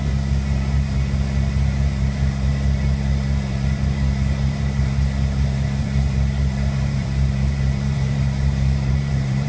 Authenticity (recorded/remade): remade